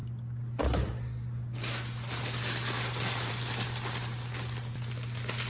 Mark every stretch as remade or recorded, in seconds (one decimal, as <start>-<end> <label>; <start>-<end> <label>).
0.0-5.5 recorded